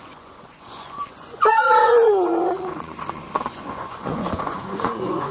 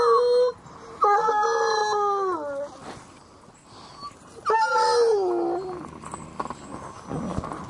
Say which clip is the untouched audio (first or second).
second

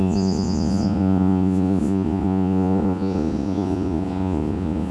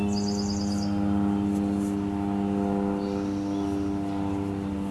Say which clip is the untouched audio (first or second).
second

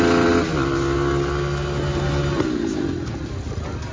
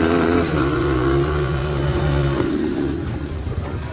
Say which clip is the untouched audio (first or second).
first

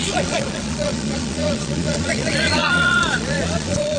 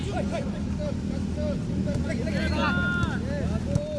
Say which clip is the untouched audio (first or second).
second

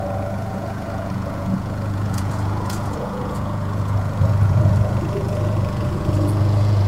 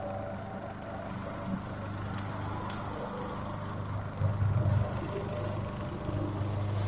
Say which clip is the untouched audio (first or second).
second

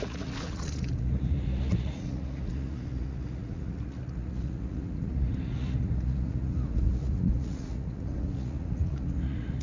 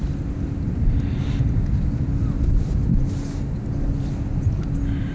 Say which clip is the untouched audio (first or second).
second